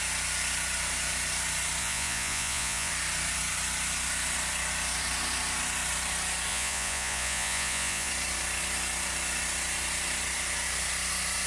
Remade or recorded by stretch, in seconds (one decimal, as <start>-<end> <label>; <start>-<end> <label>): 0.0-1.8 recorded; 1.8-2.9 remade; 2.9-6.5 recorded; 6.5-8.1 remade; 8.1-11.5 recorded